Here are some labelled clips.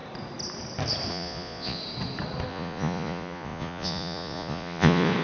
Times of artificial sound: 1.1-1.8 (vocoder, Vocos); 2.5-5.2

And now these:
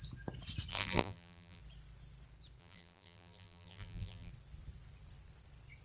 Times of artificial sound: 0.7-1.6 (vocoder, BigVGAN v2); 2.6-4.3

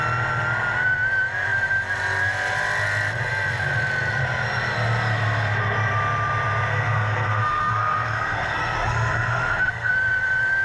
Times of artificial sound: 6.7-9.9 (codec, SNAC)

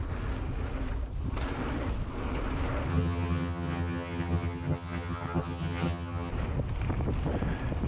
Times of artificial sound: 2.9-6.3 (vocoder, HiFi-GAN)

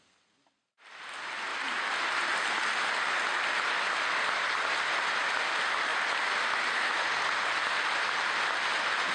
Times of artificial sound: none

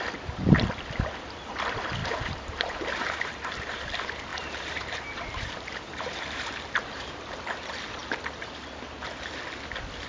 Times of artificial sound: 2.0-3.5 (vocoder, BigVGAN v2); 4.3-7.4

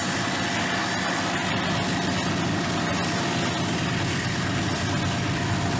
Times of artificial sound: none

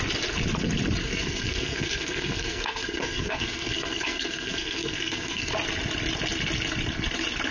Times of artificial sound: 1.0-5.5 (codec, SNAC)